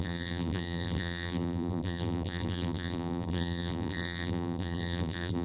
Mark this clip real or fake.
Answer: fake